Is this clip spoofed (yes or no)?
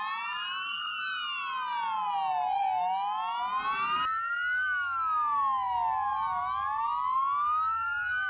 no